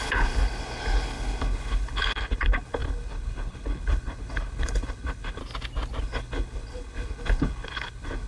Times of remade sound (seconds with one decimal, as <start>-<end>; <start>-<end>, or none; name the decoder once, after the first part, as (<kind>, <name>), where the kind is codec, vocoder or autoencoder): 0.0-5.4 (codec, HILCodec); 6.0-8.3

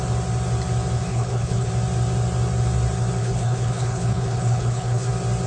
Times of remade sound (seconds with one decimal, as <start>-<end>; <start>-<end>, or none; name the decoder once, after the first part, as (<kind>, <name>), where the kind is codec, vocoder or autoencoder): 1.1-1.7 (codec, HILCodec); 3.2-5.1